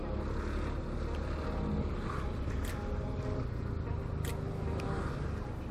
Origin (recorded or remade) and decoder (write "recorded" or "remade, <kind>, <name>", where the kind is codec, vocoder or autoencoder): recorded